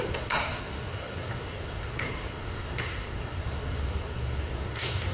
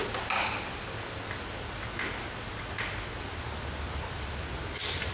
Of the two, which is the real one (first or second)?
second